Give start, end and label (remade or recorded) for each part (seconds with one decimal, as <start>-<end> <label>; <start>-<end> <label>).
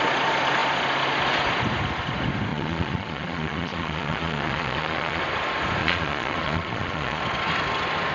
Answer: 0.0-2.5 recorded; 2.5-5.2 remade; 5.2-5.8 recorded; 5.8-7.2 remade; 7.2-8.1 recorded